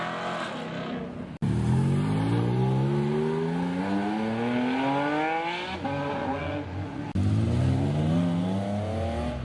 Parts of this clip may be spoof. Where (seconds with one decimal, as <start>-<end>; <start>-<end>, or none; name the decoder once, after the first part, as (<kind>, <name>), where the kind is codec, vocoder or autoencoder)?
6.2-7.0 (vocoder, Vocos)